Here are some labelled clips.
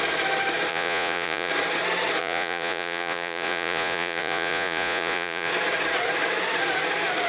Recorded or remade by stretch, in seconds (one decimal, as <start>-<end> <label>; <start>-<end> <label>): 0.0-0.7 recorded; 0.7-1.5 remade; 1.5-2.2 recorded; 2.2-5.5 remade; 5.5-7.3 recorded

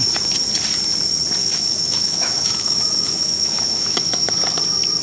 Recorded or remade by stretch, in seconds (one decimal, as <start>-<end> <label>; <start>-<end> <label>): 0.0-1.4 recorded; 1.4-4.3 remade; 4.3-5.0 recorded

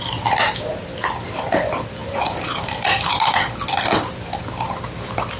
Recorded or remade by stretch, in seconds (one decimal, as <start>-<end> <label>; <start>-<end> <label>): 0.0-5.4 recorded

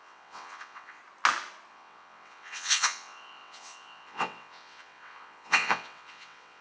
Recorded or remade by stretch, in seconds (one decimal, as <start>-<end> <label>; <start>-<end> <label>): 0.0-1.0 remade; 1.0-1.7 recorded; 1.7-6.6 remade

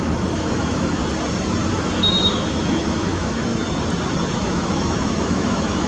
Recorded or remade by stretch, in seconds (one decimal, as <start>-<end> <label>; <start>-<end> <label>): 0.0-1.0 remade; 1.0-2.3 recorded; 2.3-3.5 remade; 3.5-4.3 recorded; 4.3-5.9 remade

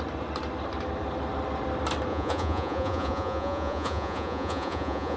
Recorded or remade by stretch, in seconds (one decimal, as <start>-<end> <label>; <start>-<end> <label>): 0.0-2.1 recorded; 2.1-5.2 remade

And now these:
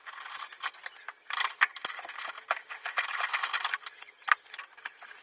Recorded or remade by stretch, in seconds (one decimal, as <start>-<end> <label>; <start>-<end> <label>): 0.0-5.2 recorded